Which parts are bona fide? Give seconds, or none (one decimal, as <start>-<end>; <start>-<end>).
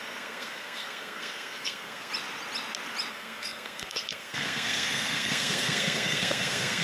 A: 2.1-3.1